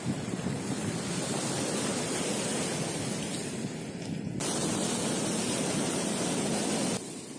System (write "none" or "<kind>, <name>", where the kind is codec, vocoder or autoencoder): none